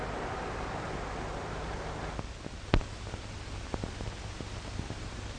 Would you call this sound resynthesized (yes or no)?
no